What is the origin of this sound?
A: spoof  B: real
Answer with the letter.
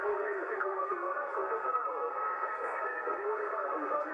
A